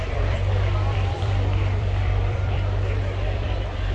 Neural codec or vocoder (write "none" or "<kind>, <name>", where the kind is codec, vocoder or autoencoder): vocoder, BigVGAN v2